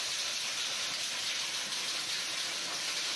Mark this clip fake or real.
real